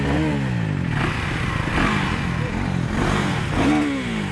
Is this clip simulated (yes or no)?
no